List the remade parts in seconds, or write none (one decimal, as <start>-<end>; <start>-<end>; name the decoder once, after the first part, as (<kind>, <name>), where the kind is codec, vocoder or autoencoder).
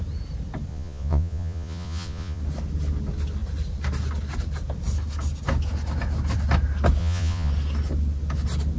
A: 0.7-2.4 (vocoder, Vocos); 7.0-7.5